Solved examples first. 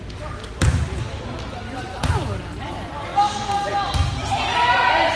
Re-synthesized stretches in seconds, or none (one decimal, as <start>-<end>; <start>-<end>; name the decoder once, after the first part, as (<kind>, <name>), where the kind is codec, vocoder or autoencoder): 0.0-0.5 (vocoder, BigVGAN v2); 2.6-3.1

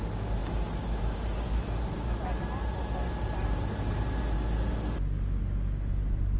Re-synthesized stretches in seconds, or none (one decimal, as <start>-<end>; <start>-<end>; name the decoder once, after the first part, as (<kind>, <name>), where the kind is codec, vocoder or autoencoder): none

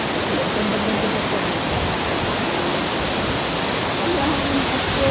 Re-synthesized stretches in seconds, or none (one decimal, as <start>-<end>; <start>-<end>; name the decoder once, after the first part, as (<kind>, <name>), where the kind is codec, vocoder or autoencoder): none